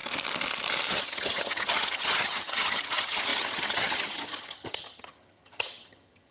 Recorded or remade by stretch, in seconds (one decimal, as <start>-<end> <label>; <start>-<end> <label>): 0.0-0.9 recorded; 0.9-6.3 remade